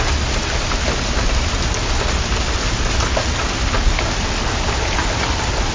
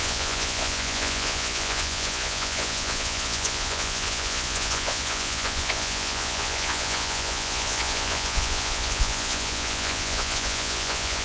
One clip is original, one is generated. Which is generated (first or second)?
second